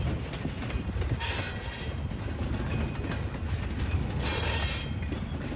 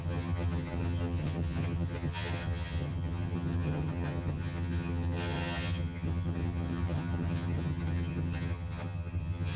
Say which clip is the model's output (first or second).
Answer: second